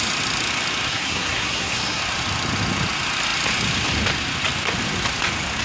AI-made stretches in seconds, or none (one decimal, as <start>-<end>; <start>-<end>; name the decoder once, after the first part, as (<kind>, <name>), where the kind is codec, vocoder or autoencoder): 0.9-2.0 (codec, SNAC)